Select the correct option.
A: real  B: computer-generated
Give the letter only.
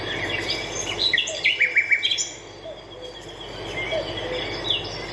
A